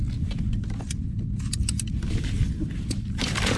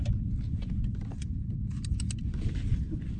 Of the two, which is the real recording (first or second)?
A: first